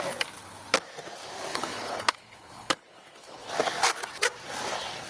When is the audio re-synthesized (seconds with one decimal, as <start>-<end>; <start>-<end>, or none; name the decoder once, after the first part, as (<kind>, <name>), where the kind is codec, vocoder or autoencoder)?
1.5-3.5 (codec, HILCodec)